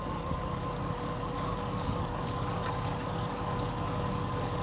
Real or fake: fake